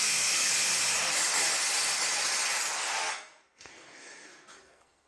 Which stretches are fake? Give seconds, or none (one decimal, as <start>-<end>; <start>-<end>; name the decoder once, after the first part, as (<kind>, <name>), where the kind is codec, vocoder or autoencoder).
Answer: 0.0-0.5 (codec, SNAC); 3.1-5.1